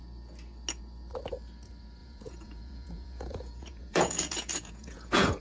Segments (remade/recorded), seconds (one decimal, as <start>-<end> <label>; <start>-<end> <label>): 0.0-2.0 recorded; 2.0-5.4 remade